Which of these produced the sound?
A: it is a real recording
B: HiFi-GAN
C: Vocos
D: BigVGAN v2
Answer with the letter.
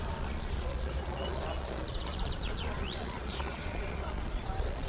C